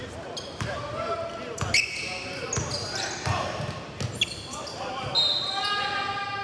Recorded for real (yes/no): yes